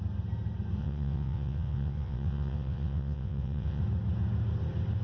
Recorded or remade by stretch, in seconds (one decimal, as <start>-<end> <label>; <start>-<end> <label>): 0.0-0.8 recorded; 0.8-3.8 remade; 3.8-5.0 recorded